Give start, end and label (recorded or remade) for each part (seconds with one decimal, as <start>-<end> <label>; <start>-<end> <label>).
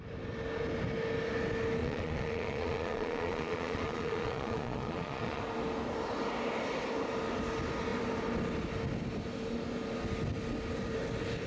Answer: 0.0-1.8 recorded; 1.8-5.4 remade; 5.4-11.5 recorded